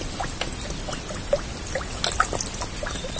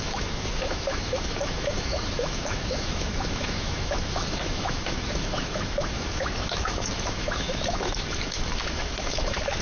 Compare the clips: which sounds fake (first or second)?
second